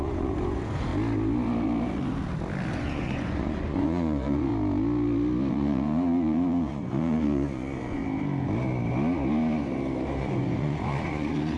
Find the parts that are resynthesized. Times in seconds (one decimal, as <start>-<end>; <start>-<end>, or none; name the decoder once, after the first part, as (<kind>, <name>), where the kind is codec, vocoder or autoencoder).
0.0-0.9 (vocoder, Vocos); 2.7-4.5; 5.5-8.0; 10.2-11.6